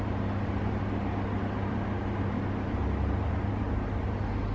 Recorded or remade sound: recorded